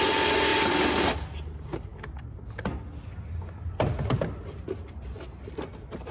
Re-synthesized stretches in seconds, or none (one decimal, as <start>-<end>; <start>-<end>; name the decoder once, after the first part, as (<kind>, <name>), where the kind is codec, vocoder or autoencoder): none